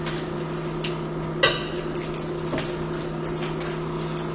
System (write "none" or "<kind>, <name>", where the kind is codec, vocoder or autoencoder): none